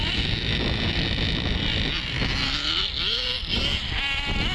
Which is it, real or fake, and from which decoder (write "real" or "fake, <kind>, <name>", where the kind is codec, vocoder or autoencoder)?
real